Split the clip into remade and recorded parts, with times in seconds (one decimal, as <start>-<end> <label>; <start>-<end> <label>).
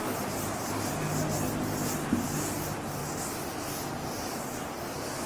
0.0-0.9 remade; 0.9-5.3 recorded